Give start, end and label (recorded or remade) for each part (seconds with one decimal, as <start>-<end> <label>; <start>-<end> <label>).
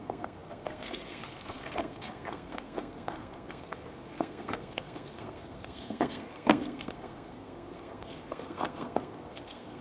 0.0-9.8 remade